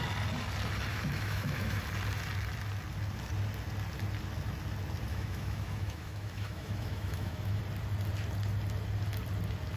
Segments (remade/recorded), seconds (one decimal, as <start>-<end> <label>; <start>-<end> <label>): 0.0-0.9 recorded; 0.9-1.8 remade; 1.8-5.1 recorded; 5.1-7.6 remade; 7.6-9.8 recorded